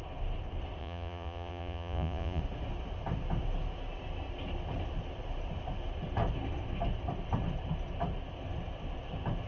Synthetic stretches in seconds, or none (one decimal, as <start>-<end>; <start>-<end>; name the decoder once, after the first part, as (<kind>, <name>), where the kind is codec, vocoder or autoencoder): 0.8-2.4 (vocoder, Vocos)